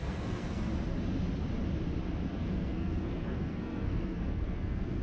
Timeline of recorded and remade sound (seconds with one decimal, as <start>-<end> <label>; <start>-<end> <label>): 0.0-0.7 remade; 0.7-2.4 recorded; 2.4-5.0 remade